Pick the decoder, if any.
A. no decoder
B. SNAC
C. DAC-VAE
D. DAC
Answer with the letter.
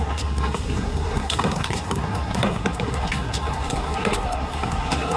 B